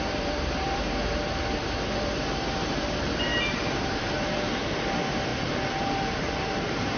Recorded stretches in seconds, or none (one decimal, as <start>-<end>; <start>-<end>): none